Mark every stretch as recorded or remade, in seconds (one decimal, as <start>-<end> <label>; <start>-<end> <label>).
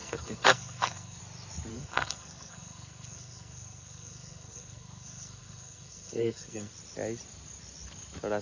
0.0-1.2 remade; 1.2-1.7 recorded; 1.7-6.7 remade; 6.7-8.4 recorded